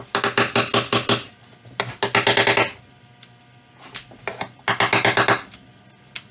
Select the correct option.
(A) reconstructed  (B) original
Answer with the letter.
B